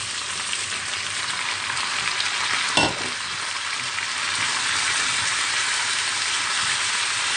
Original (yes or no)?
yes